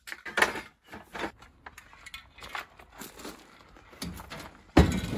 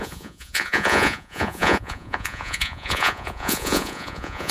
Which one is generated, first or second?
second